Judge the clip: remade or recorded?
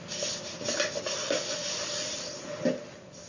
recorded